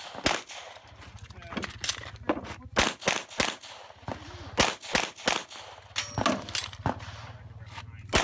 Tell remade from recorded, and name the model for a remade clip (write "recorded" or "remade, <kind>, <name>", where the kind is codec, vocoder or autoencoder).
recorded